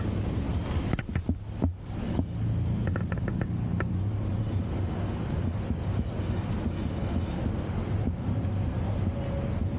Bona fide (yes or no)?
yes